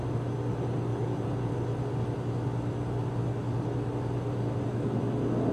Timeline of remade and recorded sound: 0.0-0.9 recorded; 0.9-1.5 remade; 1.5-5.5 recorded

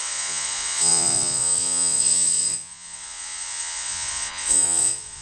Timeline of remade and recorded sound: 0.0-5.2 remade

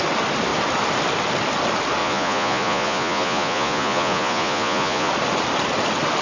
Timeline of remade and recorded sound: 0.0-2.0 recorded; 2.0-5.1 remade; 5.1-6.2 recorded

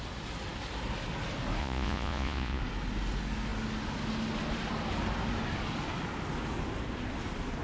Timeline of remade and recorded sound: 0.0-1.6 recorded; 1.6-2.6 remade; 2.6-7.6 recorded